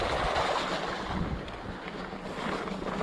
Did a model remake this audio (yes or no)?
no